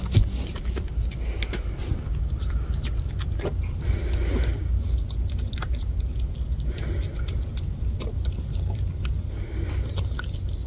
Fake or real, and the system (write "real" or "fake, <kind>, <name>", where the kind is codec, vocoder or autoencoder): real